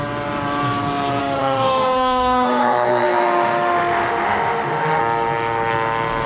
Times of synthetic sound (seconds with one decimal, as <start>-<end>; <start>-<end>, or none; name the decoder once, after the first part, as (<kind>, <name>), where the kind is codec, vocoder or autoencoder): 1.2-5.0 (autoencoder, DAC-VAE)